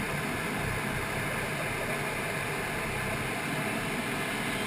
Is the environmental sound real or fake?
real